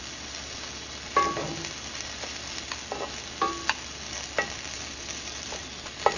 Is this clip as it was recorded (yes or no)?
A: yes